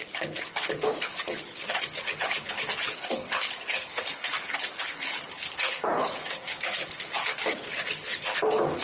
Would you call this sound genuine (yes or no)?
no